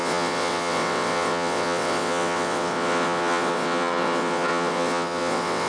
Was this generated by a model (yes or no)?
yes